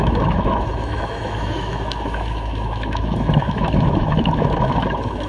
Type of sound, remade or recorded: remade